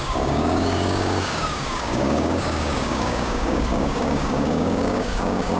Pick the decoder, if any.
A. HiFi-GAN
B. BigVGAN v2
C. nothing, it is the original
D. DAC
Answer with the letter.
D